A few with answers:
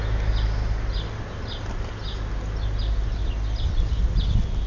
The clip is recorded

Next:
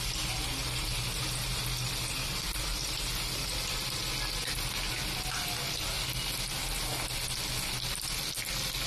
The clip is recorded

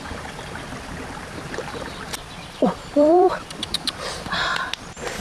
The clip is remade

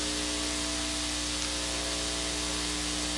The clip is recorded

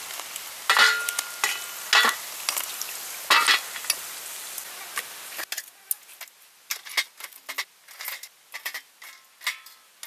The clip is recorded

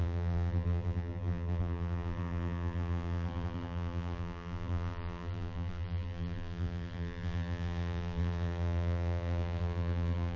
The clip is remade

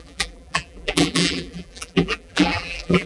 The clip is remade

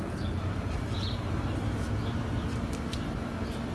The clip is recorded